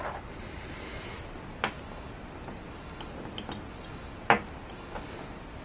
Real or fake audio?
real